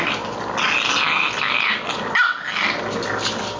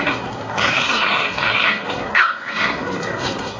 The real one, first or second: first